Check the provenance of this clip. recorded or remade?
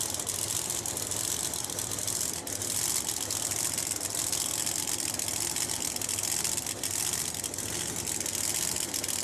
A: recorded